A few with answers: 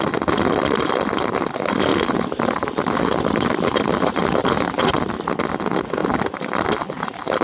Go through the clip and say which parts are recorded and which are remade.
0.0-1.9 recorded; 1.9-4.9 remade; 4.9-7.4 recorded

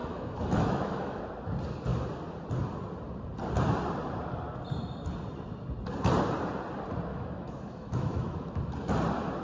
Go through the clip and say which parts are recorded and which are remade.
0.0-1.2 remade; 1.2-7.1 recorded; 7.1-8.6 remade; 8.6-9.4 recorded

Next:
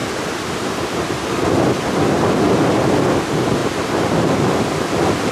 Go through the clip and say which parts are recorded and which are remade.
0.0-1.3 remade; 1.3-5.3 recorded

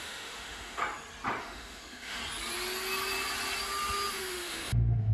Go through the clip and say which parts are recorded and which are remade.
0.0-0.8 remade; 0.8-1.4 recorded; 1.4-2.2 remade; 2.2-4.1 recorded; 4.1-5.1 remade

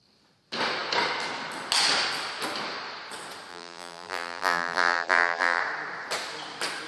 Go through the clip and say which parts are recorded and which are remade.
0.0-3.5 recorded; 3.5-5.6 remade; 5.6-6.9 recorded

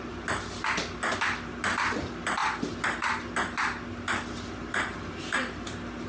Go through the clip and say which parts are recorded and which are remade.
0.0-6.1 recorded